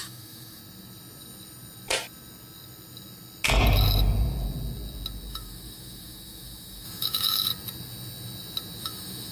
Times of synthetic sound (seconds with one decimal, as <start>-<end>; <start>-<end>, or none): 0.0-0.6; 5.3-7.5; 8.8-9.3